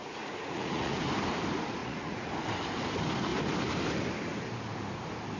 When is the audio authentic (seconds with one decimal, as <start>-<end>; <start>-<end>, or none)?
1.0-1.8; 2.3-5.4